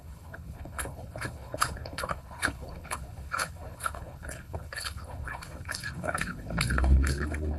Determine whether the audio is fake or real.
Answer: fake